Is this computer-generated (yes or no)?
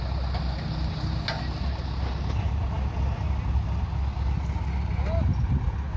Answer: no